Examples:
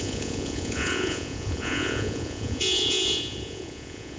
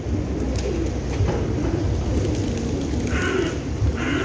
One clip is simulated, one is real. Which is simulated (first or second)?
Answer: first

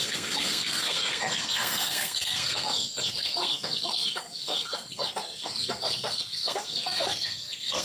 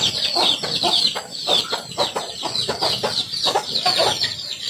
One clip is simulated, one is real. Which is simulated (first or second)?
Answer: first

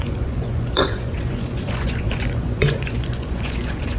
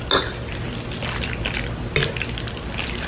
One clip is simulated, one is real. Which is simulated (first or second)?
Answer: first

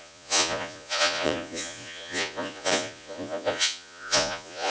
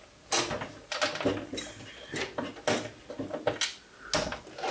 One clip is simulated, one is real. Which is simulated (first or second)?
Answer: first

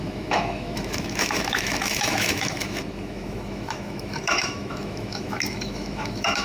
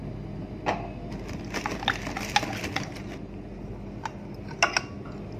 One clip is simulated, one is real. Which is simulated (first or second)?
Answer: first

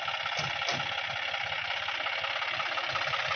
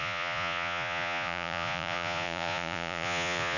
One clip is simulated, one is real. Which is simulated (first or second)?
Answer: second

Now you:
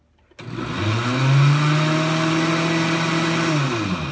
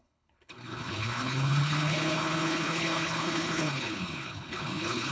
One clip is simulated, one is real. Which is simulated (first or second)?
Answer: second